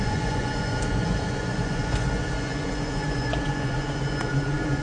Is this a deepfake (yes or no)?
yes